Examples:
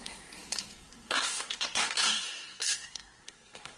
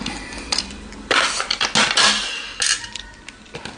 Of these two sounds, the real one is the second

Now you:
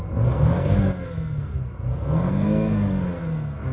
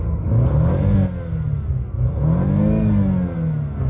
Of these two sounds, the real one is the second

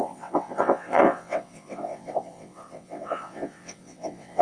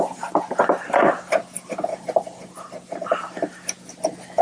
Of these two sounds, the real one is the second